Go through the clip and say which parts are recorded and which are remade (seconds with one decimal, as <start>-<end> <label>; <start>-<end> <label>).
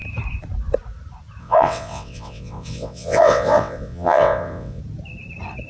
0.0-1.4 recorded; 1.4-4.8 remade; 4.8-5.7 recorded